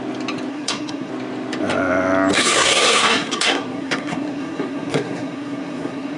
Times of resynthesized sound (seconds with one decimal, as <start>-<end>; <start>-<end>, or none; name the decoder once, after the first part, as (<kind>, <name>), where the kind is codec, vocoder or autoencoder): 0.5-1.1 (codec, SNAC); 2.3-6.2